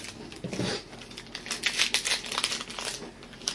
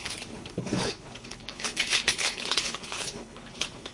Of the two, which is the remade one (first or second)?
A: second